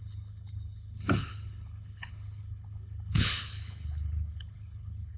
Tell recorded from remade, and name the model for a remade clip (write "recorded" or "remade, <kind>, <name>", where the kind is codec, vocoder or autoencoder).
remade, codec, HILCodec